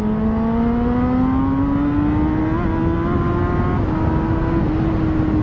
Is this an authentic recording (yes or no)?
yes